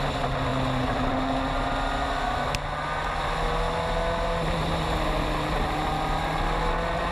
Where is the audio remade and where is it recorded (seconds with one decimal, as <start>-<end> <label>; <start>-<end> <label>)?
0.0-7.1 recorded